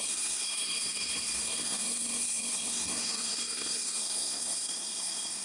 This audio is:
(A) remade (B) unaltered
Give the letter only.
A